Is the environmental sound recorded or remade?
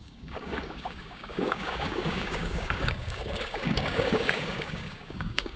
remade